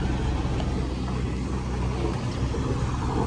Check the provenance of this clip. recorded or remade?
recorded